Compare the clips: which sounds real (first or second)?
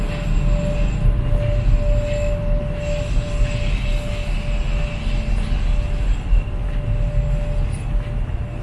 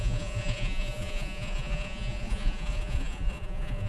first